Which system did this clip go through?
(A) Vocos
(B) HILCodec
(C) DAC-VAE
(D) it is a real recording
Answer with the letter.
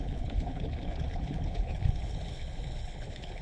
B